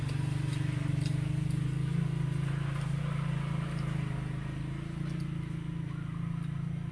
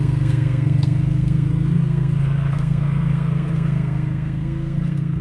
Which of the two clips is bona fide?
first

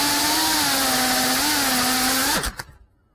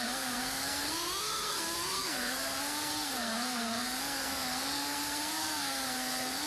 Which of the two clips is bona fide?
first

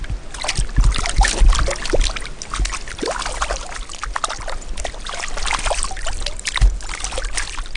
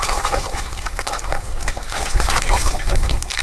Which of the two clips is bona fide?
first